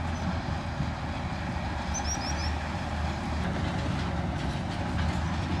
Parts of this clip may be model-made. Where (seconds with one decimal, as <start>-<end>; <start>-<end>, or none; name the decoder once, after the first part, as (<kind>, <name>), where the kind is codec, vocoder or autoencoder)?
none